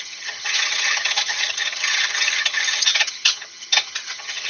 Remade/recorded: remade